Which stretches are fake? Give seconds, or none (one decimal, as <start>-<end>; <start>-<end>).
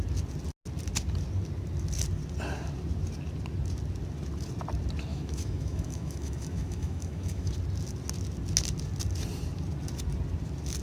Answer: 5.1-7.5